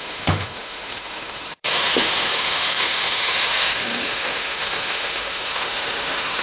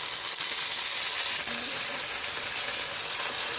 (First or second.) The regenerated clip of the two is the first